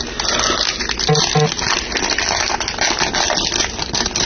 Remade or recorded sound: recorded